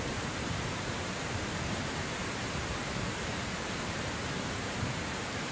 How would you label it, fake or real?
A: fake